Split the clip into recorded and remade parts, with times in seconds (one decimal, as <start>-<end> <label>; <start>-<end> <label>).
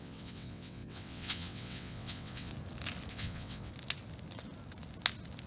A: 0.0-2.5 remade; 2.5-3.1 recorded; 3.1-3.7 remade; 3.7-5.5 recorded